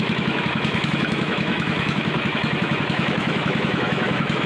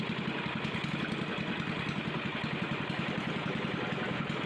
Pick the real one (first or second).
second